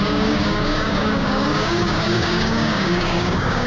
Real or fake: fake